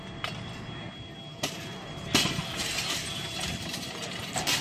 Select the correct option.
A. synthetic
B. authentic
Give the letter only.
B